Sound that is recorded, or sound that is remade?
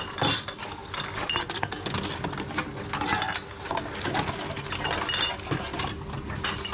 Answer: recorded